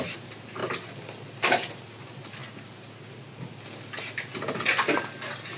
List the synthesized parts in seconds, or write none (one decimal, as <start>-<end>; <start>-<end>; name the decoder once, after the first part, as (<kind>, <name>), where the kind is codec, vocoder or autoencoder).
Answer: none